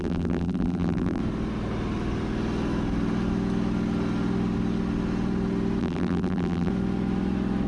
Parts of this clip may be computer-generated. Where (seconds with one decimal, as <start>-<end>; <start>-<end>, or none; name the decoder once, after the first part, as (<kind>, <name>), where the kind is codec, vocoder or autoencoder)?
0.0-1.2 (vocoder, BigVGAN v2); 5.8-6.7

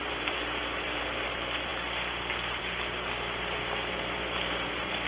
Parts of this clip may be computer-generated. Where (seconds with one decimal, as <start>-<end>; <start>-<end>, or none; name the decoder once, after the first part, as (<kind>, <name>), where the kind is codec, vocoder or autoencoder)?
0.0-1.7 (vocoder, BigVGAN v2); 2.6-5.1

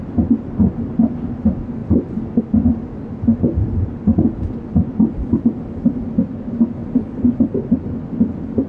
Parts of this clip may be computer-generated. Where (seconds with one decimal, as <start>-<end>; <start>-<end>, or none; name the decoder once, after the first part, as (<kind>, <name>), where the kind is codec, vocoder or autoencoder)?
1.8-2.4 (vocoder, BigVGAN v2)

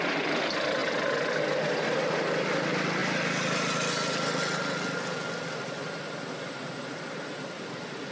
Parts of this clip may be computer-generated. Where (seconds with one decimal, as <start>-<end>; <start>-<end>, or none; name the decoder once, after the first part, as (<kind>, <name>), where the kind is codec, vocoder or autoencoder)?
none

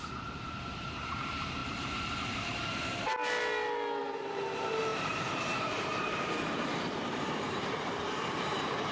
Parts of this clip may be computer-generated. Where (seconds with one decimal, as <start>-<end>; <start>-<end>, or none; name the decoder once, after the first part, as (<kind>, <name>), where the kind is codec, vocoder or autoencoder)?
0.0-3.1 (vocoder, BigVGAN v2); 4.0-8.9

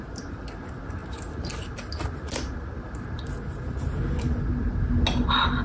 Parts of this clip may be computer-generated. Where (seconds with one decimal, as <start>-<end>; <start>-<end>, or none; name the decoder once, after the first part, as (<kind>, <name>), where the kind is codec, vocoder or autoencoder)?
none

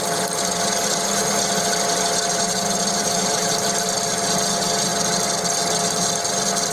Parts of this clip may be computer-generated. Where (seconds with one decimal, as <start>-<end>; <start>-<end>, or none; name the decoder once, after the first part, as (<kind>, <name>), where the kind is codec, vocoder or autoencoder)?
2.3-3.6 (vocoder, BigVGAN v2)